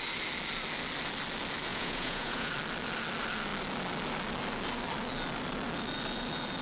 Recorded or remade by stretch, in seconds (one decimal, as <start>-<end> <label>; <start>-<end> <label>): 0.0-1.7 recorded; 1.7-2.5 remade; 2.5-6.6 recorded